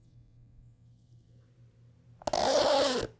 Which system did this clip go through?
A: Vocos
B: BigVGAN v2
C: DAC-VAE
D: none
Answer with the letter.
D